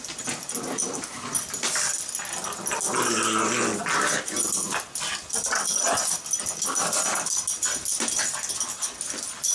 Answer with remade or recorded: recorded